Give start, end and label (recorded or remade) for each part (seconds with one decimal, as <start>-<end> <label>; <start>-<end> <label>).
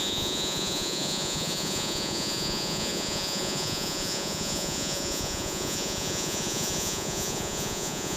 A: 0.0-8.2 remade